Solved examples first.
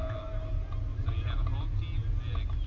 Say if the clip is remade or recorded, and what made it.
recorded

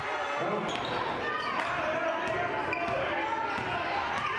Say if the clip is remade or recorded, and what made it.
recorded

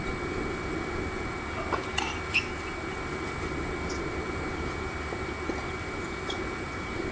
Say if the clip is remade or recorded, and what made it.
recorded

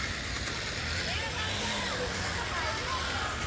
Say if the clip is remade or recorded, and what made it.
recorded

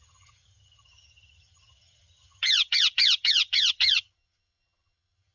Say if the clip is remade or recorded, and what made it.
remade, vocoder, HiFi-GAN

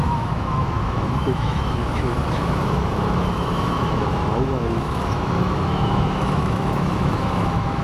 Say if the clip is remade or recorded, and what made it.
remade, autoencoder, DAC-VAE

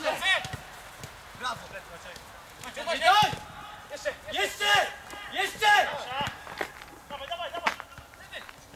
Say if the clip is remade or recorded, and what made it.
recorded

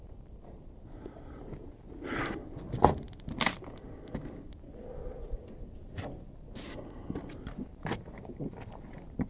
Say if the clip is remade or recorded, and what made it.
recorded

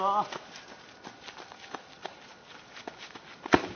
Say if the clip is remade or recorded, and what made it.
remade, vocoder, BigVGAN v2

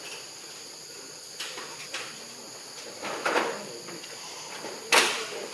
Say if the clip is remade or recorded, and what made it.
recorded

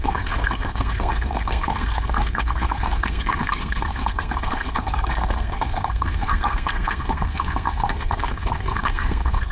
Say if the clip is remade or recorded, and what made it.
remade, codec, SNAC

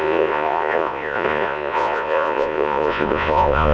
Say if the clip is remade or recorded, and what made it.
remade, vocoder, Vocos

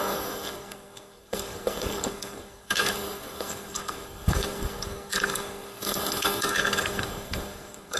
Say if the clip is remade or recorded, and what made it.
remade, codec, SNAC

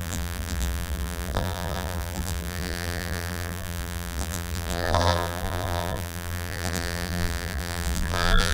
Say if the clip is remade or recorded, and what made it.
remade, vocoder, BigVGAN v2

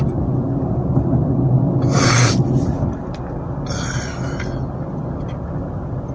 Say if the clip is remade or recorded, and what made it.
recorded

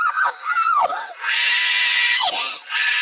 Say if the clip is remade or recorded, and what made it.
recorded